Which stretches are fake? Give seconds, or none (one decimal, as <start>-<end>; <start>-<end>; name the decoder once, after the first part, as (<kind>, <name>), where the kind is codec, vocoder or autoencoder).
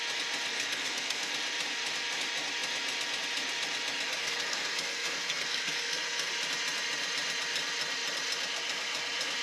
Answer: 0.5-1.3 (codec, SNAC); 4.2-6.3